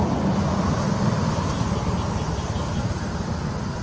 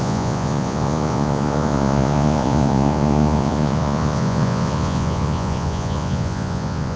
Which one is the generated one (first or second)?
second